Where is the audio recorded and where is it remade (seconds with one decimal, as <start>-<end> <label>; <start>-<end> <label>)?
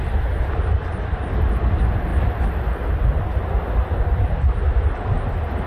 0.0-5.7 recorded